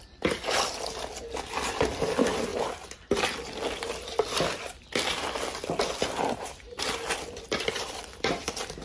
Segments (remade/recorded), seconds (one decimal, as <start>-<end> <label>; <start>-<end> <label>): 0.0-2.5 remade; 2.5-7.2 recorded; 7.2-8.8 remade

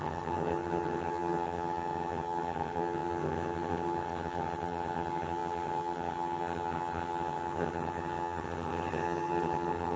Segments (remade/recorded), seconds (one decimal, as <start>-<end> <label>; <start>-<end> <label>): 0.0-10.0 remade

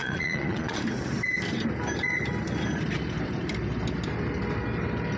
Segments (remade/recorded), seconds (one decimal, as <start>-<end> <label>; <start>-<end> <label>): 0.0-0.8 remade; 0.8-5.2 recorded

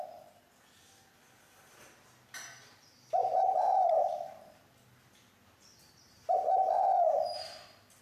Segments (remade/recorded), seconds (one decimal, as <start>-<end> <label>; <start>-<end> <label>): 0.0-3.2 recorded; 3.2-4.6 remade; 4.6-6.9 recorded; 6.9-7.6 remade; 7.6-8.0 recorded